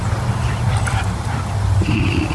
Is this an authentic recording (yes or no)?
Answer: no